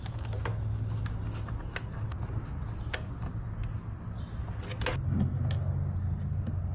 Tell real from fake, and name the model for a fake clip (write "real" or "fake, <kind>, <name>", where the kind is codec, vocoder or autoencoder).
real